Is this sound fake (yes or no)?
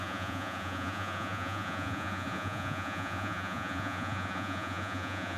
yes